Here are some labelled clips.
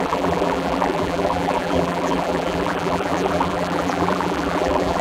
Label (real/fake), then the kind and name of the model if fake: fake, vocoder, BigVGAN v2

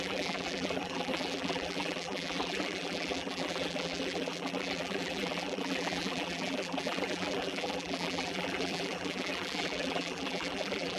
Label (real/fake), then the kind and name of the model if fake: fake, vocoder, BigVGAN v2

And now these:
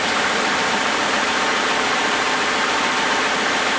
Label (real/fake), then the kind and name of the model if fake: fake, vocoder, BigVGAN v2